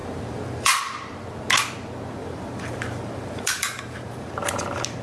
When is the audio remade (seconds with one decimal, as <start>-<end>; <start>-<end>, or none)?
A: 0.0-0.8; 2.2-4.3